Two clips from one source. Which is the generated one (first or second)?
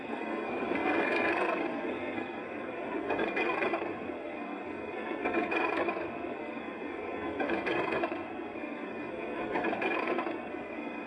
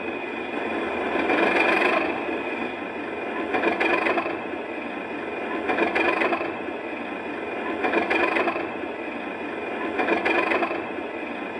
first